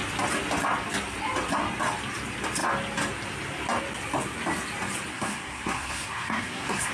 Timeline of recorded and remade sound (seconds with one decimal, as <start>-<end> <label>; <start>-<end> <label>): 0.0-5.1 recorded; 5.1-6.9 remade